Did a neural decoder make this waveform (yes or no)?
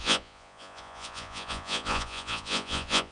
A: yes